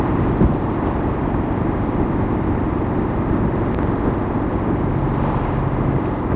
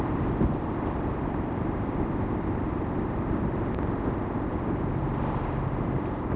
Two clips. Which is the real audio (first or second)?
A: first